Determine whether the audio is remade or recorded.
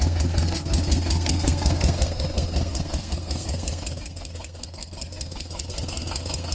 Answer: remade